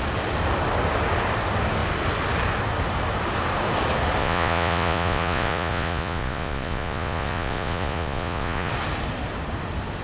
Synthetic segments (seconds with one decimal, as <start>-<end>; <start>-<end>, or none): 4.2-8.7